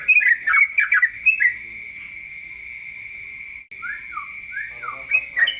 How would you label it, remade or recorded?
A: recorded